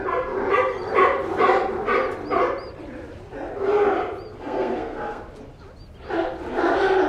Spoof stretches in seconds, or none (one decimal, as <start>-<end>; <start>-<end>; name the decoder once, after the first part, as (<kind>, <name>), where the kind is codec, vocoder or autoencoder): 4.3-5.2 (codec, SNAC)